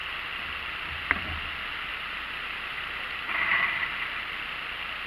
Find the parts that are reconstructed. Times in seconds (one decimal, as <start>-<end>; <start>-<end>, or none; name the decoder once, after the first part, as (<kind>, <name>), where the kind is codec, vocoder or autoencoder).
1.9-3.1 (vocoder, BigVGAN v2)